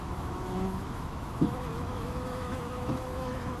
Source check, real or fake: fake